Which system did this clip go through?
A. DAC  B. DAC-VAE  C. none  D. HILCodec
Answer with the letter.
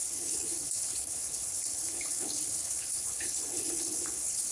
D